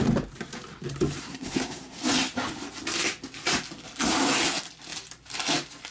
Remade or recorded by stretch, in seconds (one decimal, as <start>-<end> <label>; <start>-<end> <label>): 0.0-1.2 recorded; 1.2-2.0 remade; 2.0-5.9 recorded